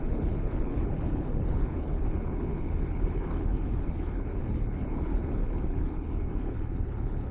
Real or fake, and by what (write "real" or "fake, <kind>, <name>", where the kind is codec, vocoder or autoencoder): fake, codec, HILCodec